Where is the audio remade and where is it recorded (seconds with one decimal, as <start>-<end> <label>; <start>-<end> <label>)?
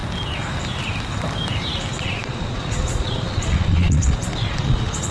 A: 0.0-1.9 recorded; 1.9-5.1 remade